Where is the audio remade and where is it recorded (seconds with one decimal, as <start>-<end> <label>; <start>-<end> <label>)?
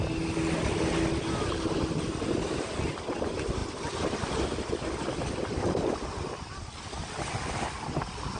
0.0-8.4 recorded